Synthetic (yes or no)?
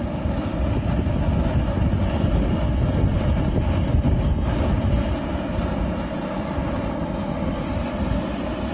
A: no